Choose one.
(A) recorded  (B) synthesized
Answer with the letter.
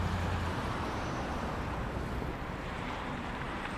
B